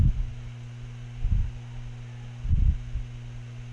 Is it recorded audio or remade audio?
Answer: recorded